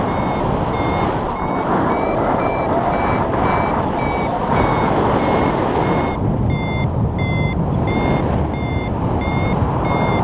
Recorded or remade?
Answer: recorded